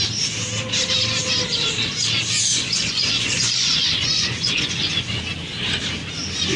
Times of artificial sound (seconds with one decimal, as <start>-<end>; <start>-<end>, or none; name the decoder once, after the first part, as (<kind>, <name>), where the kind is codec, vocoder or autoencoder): 2.5-5.1 (vocoder, Vocos)